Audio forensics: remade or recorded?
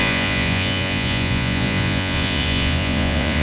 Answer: remade